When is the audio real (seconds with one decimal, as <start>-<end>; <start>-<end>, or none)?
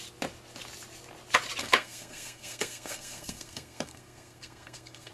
0.0-1.6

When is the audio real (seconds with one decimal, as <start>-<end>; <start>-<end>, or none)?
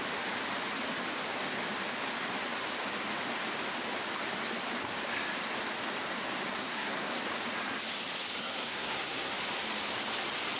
0.0-6.6; 7.2-8.4; 9.3-10.6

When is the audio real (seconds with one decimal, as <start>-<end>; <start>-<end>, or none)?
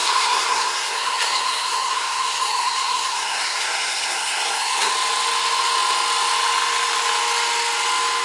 4.9-8.2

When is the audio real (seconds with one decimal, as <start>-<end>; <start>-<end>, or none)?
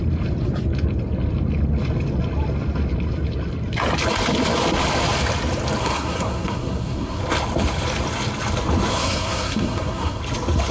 0.0-5.8; 7.2-8.9; 10.2-10.7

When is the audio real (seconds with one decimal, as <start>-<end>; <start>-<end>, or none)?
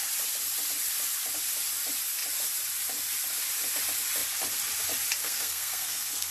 0.0-5.2